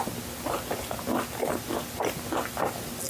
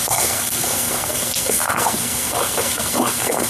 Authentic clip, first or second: first